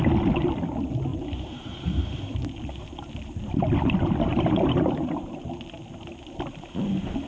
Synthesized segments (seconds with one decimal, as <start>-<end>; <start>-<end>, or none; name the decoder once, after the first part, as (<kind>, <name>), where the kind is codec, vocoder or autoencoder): 1.1-2.4 (vocoder, BigVGAN v2); 4.3-5.4

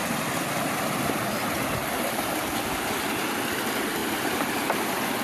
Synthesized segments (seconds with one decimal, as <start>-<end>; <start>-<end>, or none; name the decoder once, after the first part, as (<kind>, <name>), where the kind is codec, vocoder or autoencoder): 1.8-2.5 (vocoder, BigVGAN v2); 4.0-4.5

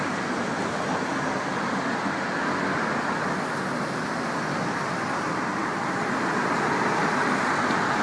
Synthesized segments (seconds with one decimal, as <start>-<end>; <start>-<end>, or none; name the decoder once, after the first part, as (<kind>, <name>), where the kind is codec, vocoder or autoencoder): 5.6-6.8 (vocoder, BigVGAN v2)